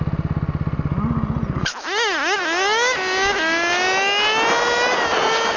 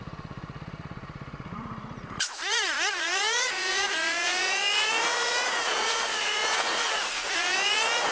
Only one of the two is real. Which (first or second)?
first